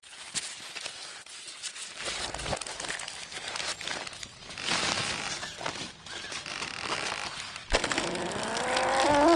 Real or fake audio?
real